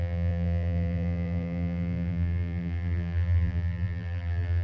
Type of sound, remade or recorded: remade